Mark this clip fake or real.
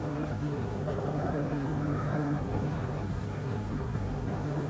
fake